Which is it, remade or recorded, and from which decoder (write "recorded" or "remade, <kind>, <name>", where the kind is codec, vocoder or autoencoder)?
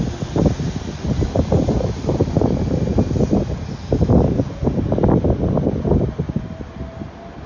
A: recorded